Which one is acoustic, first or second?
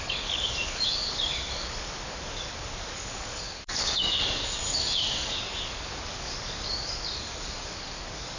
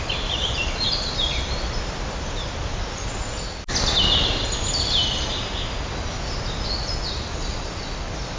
second